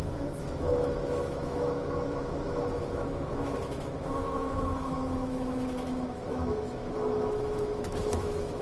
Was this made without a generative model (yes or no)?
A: no